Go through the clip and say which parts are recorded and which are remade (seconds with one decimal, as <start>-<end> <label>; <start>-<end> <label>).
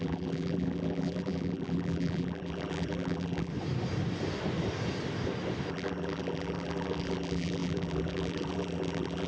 0.0-3.5 remade; 3.5-5.7 recorded; 5.7-9.3 remade